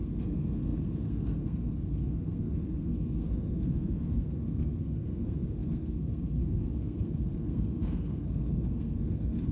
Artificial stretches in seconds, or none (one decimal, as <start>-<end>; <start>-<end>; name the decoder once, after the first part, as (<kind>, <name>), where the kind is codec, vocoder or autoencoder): 0.0-9.5 (codec, SNAC)